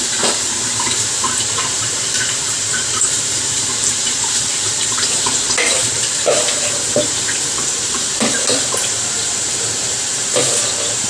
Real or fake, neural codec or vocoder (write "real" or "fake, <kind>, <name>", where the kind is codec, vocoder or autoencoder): fake, vocoder, BigVGAN v2